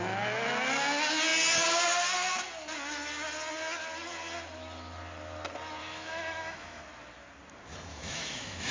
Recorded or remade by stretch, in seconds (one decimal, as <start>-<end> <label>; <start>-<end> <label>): 0.0-5.8 recorded; 5.8-6.8 remade; 6.8-7.9 recorded; 7.9-8.7 remade